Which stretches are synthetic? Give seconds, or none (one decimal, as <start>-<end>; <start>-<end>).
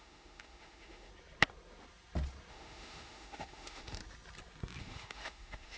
0.0-1.1; 2.5-4.0; 4.8-5.8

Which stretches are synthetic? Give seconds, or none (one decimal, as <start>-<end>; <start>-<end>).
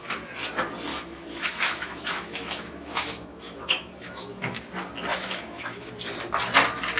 0.9-4.6; 5.1-5.9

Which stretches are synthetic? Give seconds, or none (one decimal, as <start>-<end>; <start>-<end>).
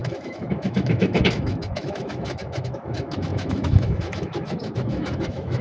0.0-5.6